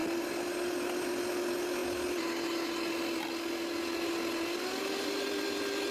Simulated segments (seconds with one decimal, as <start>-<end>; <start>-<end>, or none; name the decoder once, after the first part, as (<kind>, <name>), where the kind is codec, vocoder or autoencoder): none